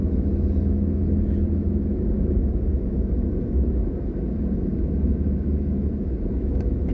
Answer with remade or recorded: remade